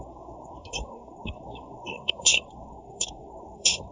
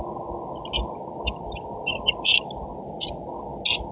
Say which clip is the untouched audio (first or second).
second